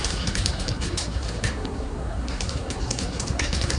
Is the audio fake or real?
fake